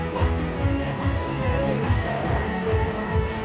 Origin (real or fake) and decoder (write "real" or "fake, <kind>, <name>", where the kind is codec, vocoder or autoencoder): fake, codec, DAC